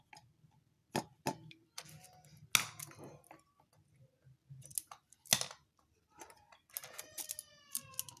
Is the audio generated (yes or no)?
no